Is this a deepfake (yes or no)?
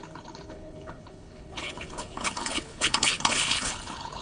yes